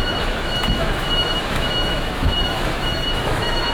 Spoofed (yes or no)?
yes